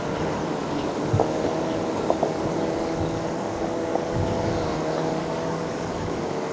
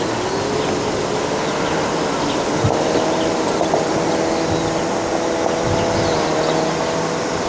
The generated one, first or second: first